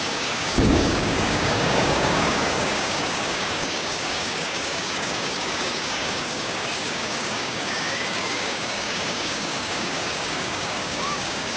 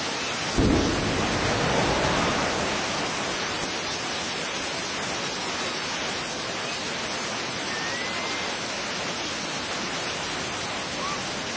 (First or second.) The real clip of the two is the second